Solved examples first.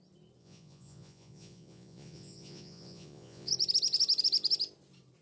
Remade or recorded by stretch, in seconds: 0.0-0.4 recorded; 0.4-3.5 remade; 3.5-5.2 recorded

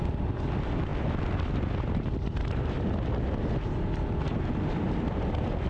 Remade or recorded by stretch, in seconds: 0.0-5.7 recorded

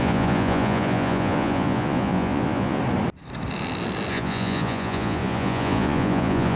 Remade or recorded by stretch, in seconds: 0.0-2.8 remade; 2.8-4.1 recorded; 4.1-6.6 remade

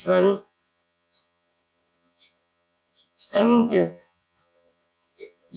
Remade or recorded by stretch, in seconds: 0.0-5.6 remade

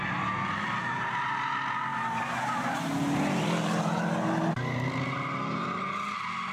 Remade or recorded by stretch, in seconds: 0.0-6.5 recorded

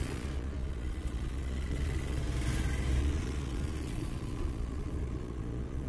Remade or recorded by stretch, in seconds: 0.0-2.2 remade; 2.2-3.0 recorded; 3.0-5.9 remade

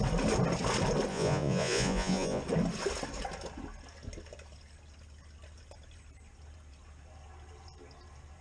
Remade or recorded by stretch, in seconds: 0.0-1.1 recorded; 1.1-2.4 remade; 2.4-8.4 recorded